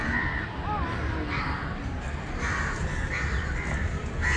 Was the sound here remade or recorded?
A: recorded